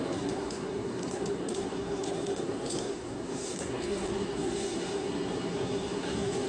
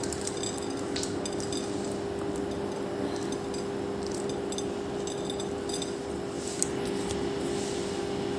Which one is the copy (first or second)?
first